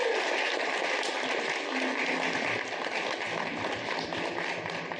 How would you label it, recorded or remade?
recorded